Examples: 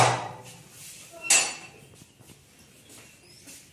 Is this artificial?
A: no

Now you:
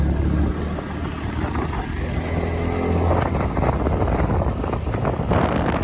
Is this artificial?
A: no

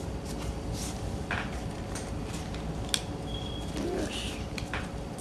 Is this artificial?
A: no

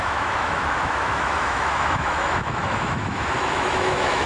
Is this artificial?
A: yes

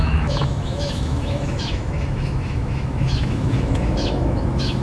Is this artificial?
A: yes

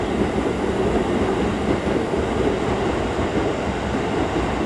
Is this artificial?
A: no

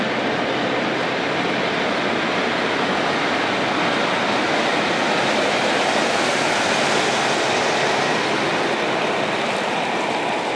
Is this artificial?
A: no